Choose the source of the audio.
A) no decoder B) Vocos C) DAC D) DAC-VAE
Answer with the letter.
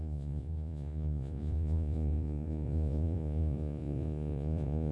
B